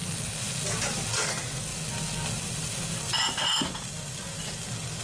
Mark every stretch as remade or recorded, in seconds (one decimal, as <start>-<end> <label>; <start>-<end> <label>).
0.0-1.2 recorded; 1.2-1.7 remade; 1.7-5.0 recorded